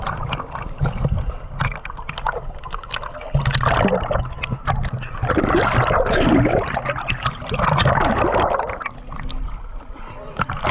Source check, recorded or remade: recorded